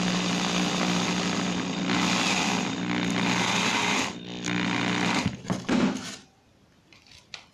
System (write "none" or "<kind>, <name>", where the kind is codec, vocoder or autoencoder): none